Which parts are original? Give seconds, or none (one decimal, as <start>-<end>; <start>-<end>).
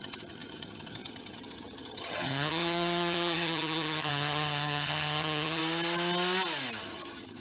5.6-6.8